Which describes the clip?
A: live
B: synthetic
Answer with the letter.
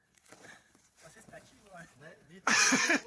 B